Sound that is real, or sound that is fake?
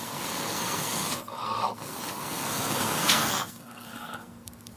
fake